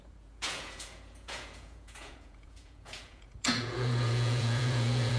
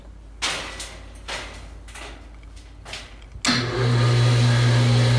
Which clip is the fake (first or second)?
first